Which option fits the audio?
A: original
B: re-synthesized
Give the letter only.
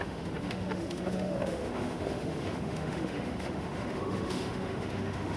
B